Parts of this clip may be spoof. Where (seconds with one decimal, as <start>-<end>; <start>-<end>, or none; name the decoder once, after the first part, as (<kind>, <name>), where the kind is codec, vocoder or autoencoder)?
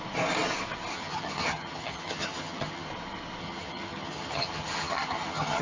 0.9-2.9 (vocoder, HiFi-GAN); 3.4-5.6